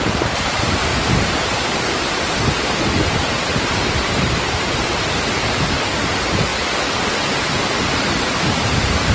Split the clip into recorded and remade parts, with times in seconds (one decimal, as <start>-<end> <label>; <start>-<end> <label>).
0.0-0.9 remade; 0.9-3.4 recorded; 3.4-6.5 remade; 6.5-7.8 recorded; 7.8-9.1 remade